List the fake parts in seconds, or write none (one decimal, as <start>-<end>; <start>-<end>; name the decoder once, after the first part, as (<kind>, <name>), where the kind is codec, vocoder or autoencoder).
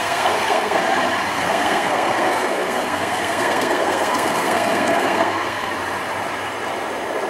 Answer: 0.0-0.8 (codec, SNAC); 1.3-5.7